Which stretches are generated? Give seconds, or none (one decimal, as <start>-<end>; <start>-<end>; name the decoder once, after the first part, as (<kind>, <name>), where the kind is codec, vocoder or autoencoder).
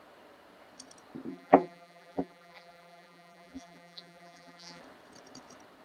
1.3-4.8 (vocoder, BigVGAN v2)